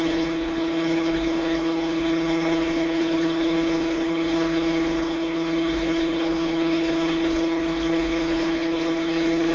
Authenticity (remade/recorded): remade